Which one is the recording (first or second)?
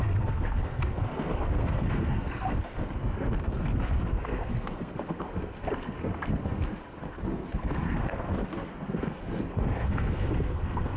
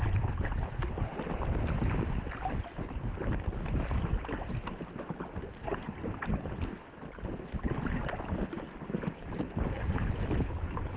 second